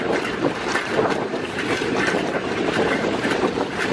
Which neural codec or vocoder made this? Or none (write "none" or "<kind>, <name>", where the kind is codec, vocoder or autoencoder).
vocoder, BigVGAN v2